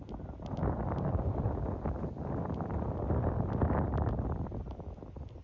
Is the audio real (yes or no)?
yes